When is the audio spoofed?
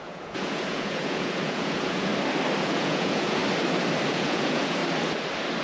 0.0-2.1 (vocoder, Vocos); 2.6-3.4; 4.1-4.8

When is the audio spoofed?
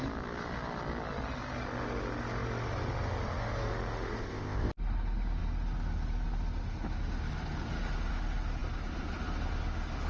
4.2-4.7 (codec, ZipCodec)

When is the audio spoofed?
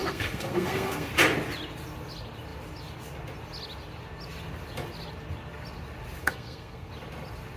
0.0-1.1 (codec, SNAC); 6.2-6.9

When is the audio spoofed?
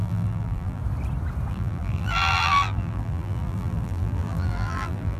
0.0-0.8 (vocoder, BigVGAN v2); 1.5-5.2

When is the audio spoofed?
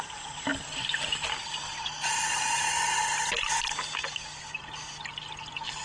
none